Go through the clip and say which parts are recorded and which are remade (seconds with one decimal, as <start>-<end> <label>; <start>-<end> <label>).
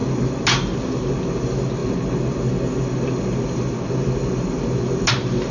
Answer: 0.0-5.5 recorded